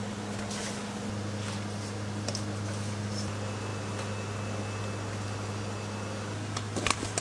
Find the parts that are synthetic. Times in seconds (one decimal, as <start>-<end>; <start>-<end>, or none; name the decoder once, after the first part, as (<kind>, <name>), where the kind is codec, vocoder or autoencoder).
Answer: none

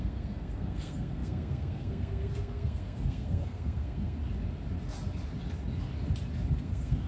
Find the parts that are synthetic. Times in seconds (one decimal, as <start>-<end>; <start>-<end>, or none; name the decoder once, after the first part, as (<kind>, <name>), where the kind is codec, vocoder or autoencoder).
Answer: 0.0-4.2 (codec, SNAC); 6.6-7.1